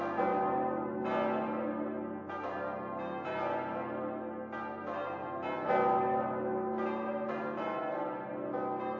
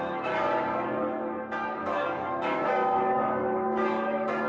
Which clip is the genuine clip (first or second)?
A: first